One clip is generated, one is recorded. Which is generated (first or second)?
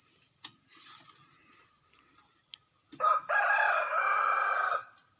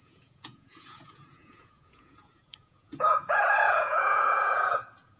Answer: second